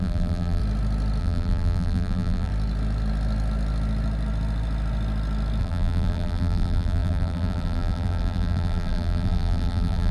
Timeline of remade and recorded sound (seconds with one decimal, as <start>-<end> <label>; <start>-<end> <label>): 0.0-0.6 remade; 0.6-1.2 recorded; 1.2-2.5 remade; 2.5-5.6 recorded; 5.6-10.1 remade